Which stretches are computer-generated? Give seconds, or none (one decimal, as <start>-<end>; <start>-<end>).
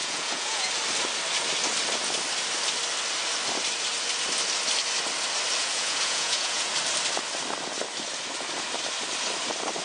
0.0-0.7; 5.6-6.7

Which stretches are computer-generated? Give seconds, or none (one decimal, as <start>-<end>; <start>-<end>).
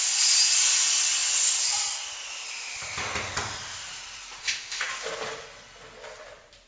4.4-4.9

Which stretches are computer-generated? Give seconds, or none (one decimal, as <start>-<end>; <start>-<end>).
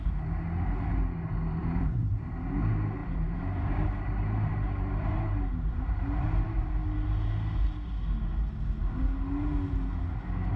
1.6-2.3; 3.0-6.7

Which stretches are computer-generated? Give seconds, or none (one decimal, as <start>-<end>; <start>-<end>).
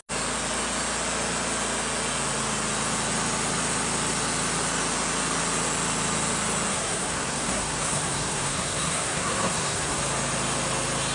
6.7-10.0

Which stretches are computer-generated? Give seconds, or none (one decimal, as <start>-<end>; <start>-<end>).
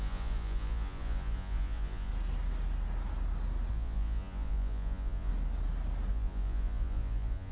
0.0-2.1; 3.7-5.3; 6.1-7.5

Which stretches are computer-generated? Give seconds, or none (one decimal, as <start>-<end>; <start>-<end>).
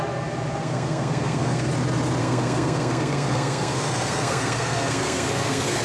0.6-1.7; 2.2-5.8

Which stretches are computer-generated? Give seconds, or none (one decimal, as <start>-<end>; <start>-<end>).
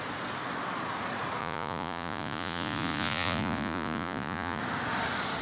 1.4-4.6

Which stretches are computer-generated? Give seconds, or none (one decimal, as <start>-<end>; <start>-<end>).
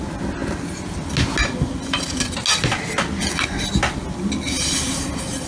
none